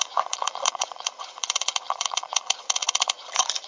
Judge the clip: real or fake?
fake